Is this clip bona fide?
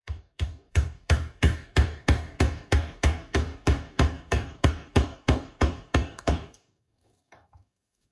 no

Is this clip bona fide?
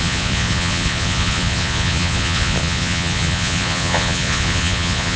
no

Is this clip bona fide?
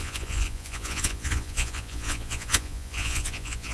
no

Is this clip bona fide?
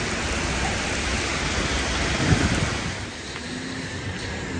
yes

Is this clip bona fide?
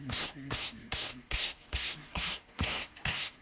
no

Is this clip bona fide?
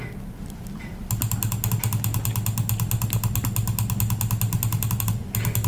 yes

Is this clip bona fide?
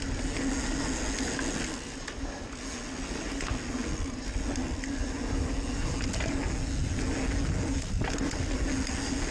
yes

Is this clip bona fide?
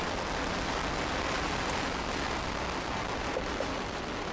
no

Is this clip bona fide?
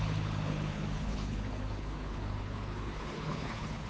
no